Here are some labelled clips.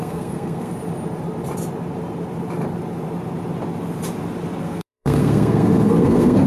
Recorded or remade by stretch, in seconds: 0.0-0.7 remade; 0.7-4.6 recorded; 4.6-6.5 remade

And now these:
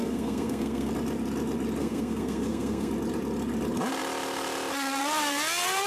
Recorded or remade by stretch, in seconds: 0.0-0.9 remade; 0.9-1.8 recorded; 1.8-2.9 remade; 2.9-5.9 recorded

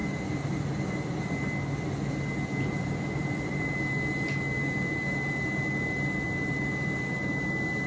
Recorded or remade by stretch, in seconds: 0.0-1.3 remade; 1.3-2.7 recorded; 2.7-3.7 remade; 3.7-7.9 recorded

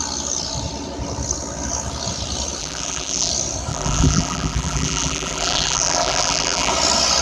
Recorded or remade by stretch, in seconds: 0.0-2.6 recorded; 2.6-3.3 remade; 3.3-3.7 recorded; 3.7-6.7 remade; 6.7-7.2 recorded

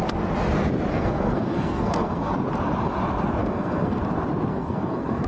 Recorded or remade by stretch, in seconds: 0.0-0.9 recorded; 0.9-2.3 remade; 2.3-3.4 recorded; 3.4-4.0 remade; 4.0-4.5 recorded; 4.5-5.3 remade

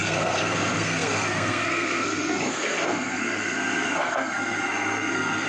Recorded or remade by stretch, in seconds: 0.0-5.5 remade